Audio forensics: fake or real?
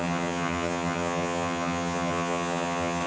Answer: fake